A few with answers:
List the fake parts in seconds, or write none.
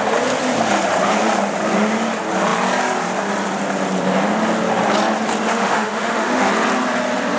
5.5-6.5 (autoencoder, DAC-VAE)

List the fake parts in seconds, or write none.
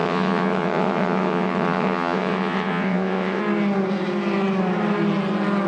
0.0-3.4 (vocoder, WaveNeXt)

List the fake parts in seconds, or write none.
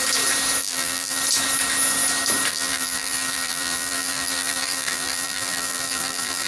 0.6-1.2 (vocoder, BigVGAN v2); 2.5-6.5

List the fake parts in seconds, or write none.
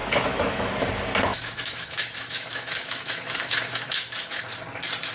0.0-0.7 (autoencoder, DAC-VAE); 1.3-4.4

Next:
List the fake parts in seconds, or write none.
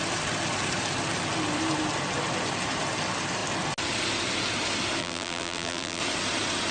5.0-6.0 (vocoder, BigVGAN v2)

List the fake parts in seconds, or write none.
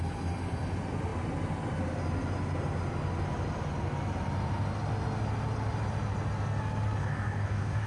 7.0-7.9 (codec, DAC)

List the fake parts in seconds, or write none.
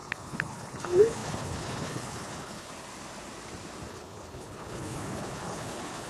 0.0-2.7 (codec, HILCodec); 3.9-6.1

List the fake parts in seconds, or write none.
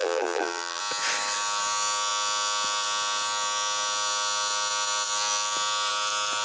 0.0-0.8 (vocoder, BigVGAN v2)